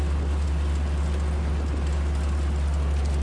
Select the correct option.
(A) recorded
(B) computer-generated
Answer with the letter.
A